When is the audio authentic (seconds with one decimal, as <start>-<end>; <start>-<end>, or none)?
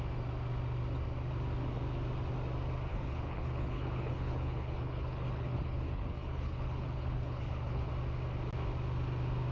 0.0-2.9; 7.9-9.5